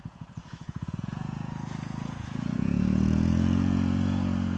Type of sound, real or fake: fake